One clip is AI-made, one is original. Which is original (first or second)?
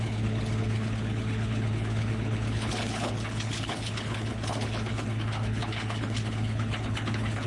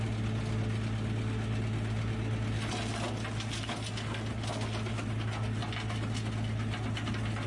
second